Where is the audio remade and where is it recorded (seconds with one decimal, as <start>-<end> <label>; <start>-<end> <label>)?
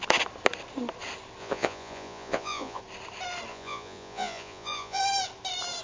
0.0-1.4 recorded; 1.4-2.8 remade; 2.8-3.5 recorded; 3.5-5.0 remade; 5.0-5.8 recorded